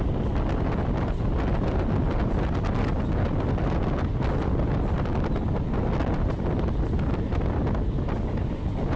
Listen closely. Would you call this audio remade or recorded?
recorded